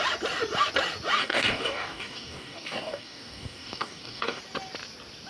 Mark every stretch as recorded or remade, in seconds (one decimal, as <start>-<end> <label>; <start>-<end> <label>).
0.0-1.2 recorded; 1.2-4.4 remade; 4.4-5.3 recorded

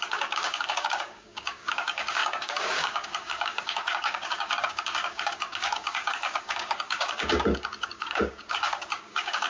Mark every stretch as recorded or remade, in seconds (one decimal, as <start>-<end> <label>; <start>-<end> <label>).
0.0-9.5 remade